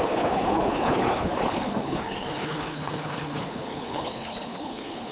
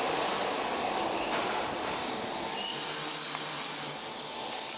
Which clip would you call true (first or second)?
second